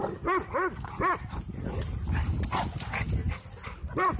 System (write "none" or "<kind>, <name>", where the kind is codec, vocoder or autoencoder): none